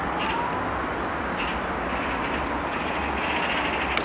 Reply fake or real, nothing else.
real